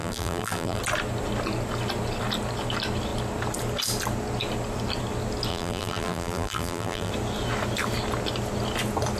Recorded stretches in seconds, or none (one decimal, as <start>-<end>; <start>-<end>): 0.8-5.5; 7.1-9.2